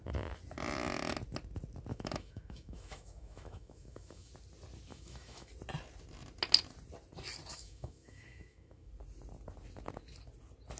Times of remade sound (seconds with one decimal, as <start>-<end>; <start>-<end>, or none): 1.9-4.3; 4.9-5.5; 7.5-8.9